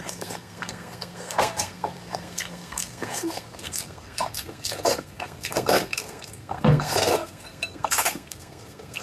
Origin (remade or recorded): remade